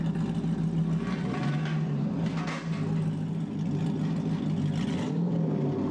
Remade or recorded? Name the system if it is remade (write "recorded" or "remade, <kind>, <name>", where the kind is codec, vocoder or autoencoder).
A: recorded